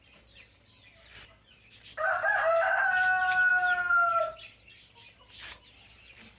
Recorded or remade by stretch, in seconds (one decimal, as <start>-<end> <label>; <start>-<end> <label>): 0.0-3.5 recorded; 3.5-4.1 remade; 4.1-6.4 recorded